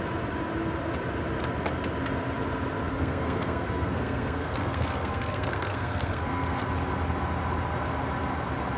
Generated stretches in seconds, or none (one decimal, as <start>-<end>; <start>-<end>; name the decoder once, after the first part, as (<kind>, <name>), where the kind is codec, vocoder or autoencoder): 2.9-6.6 (codec, SNAC)